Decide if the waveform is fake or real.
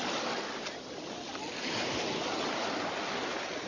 real